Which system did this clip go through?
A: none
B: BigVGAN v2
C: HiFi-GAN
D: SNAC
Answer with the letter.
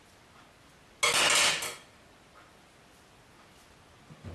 A